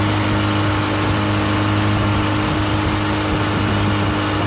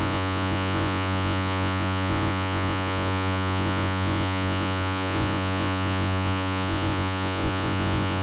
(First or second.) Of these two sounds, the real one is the first